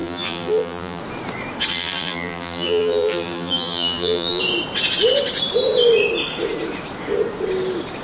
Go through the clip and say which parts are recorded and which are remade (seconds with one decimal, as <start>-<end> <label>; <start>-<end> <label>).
0.0-1.0 remade; 1.0-1.7 recorded; 1.7-4.4 remade; 4.4-8.0 recorded